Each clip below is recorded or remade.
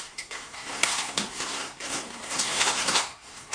remade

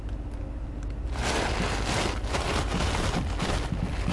recorded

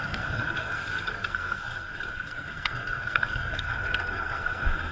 remade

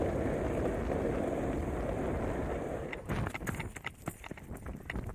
recorded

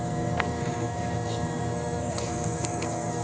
remade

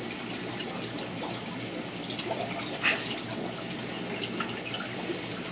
recorded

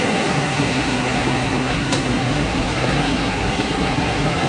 remade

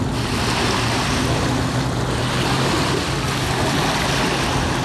recorded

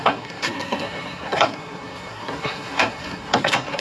remade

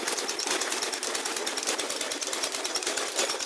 recorded